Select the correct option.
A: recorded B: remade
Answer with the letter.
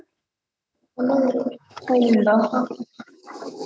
B